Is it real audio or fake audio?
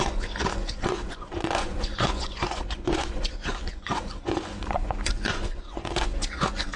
fake